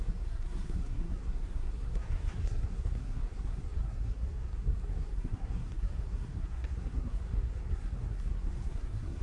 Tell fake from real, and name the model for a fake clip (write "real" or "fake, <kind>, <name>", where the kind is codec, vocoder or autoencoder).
fake, codec, SNAC